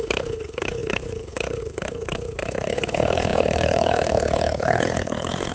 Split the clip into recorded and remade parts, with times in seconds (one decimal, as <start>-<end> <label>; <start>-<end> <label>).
0.0-5.5 remade